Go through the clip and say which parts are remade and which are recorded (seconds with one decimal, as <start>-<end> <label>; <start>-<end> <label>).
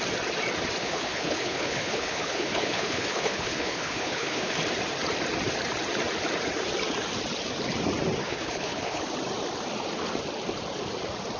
0.0-0.8 recorded; 0.8-4.5 remade; 4.5-8.2 recorded; 8.2-9.0 remade; 9.0-11.4 recorded